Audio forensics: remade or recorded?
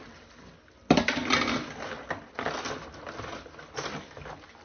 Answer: recorded